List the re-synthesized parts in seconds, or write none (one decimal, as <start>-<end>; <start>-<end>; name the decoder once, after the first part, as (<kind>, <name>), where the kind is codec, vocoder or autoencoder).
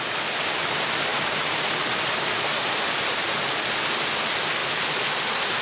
1.1-2.8 (vocoder, BigVGAN v2); 4.6-5.6